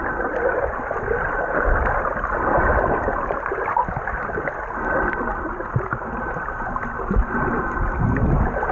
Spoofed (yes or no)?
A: no